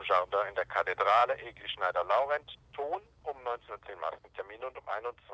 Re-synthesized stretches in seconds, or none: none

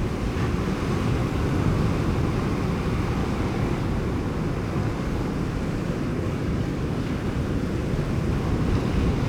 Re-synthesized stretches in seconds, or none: 1.2-1.9 (codec, DAC); 3.2-3.9; 4.8-5.3; 6.1-7.2

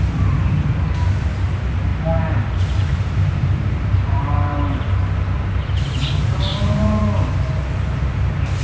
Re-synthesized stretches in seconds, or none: 1.9-4.9 (vocoder, BigVGAN v2); 6.5-7.0

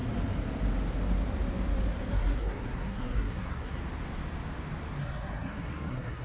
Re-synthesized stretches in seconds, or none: 2.1-3.8 (codec, SNAC); 5.0-6.2

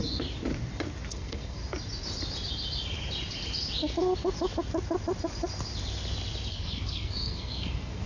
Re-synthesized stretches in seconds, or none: 1.1-1.6 (codec, SNAC); 6.5-8.1

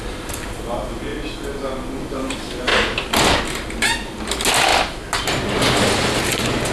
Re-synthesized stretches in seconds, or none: none

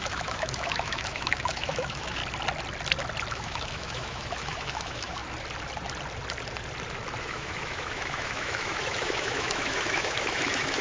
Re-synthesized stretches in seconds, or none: 0.0-2.2 (autoencoder, DAC-VAE); 3.3-5.2; 7.2-10.8